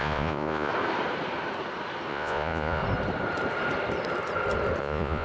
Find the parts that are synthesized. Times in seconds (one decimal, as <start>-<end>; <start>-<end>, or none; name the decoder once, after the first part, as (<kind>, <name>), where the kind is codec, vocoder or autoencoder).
0.0-0.7 (vocoder, Vocos); 2.1-2.8; 4.8-5.2